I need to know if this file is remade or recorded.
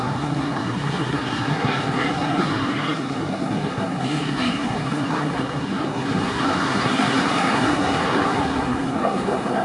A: remade